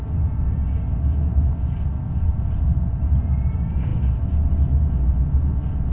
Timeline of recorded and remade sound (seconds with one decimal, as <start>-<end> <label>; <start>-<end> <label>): 0.0-1.1 recorded; 1.1-2.8 remade; 2.8-5.9 recorded